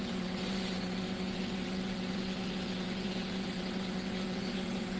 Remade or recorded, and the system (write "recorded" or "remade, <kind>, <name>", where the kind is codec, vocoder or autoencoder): remade, vocoder, WaveNeXt